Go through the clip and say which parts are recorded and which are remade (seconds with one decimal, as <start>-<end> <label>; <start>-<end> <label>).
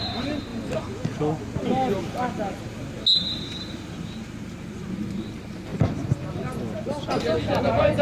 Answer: 0.0-8.0 recorded